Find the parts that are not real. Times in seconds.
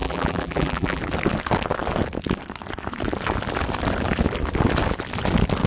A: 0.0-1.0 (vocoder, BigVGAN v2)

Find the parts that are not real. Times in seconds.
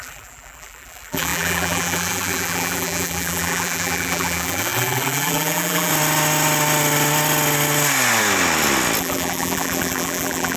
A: 0.0-5.9 (vocoder, BigVGAN v2); 9.0-10.6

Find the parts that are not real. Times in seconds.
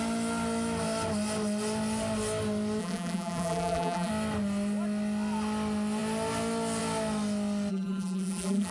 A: 2.8-4.1 (vocoder, BigVGAN v2); 7.7-8.7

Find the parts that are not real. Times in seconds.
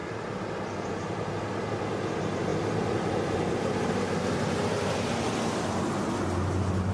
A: 0.0-1.3 (vocoder, BigVGAN v2); 2.5-5.6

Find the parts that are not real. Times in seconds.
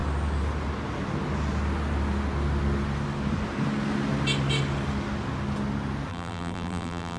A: 6.1-7.2 (vocoder, BigVGAN v2)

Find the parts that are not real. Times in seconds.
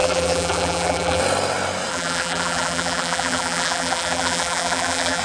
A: 0.0-1.2 (vocoder, BigVGAN v2); 1.9-5.2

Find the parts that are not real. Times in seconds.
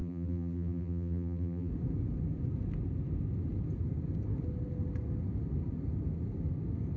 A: 0.0-1.7 (vocoder, BigVGAN v2)